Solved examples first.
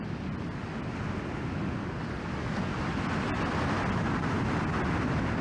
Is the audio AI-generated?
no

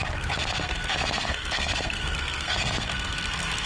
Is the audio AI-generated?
yes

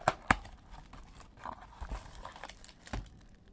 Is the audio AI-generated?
no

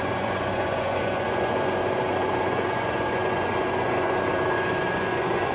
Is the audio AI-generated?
yes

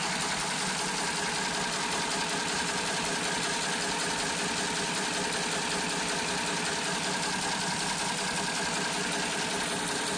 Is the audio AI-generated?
no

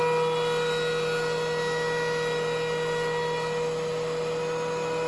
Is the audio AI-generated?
no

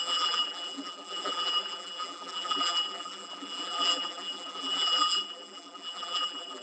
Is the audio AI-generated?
yes